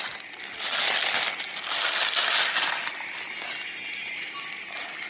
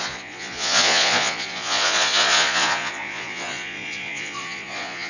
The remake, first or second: second